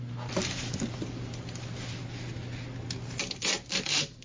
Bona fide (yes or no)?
yes